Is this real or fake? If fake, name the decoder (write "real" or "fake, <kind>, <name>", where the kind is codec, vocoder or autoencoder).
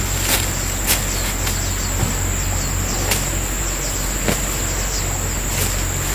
real